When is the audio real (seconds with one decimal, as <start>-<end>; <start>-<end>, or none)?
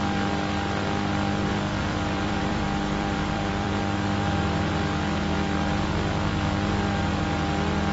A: 0.0-1.5; 3.8-7.9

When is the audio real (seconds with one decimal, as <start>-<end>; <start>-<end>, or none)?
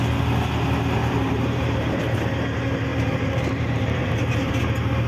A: 0.0-1.0; 2.0-2.9; 4.5-5.1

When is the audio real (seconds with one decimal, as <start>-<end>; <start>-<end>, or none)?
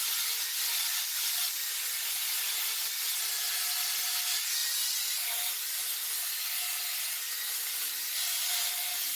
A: 2.5-4.6; 5.3-7.6; 8.7-9.2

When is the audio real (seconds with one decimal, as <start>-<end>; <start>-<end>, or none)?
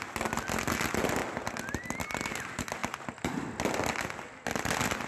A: 0.0-5.1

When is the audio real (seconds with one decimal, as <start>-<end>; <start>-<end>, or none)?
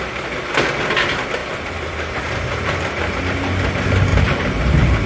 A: 0.0-1.4; 3.2-4.1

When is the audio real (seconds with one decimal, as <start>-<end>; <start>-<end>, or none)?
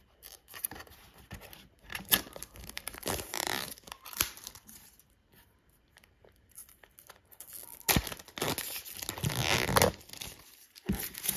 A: 6.6-10.2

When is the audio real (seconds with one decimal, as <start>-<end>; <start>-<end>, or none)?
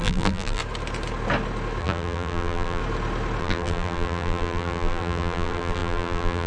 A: 0.6-1.8; 2.8-3.4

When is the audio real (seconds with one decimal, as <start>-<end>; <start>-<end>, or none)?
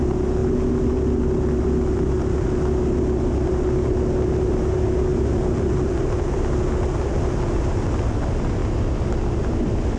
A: 0.0-10.0